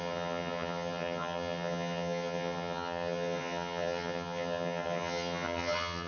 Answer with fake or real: fake